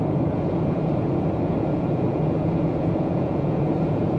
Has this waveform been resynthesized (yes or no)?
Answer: yes